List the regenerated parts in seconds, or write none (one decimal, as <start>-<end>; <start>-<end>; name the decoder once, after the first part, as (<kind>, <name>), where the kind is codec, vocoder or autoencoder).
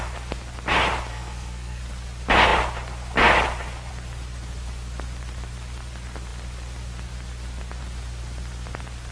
1.1-1.8 (codec, SNAC)